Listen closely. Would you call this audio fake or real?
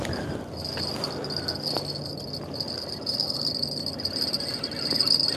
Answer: real